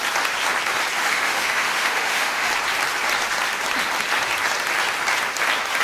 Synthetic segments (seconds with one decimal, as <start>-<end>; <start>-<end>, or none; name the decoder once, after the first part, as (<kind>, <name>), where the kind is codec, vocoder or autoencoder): 1.0-2.5 (autoencoder, DAC-VAE)